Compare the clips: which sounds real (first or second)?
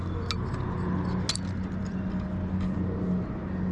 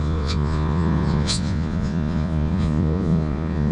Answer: first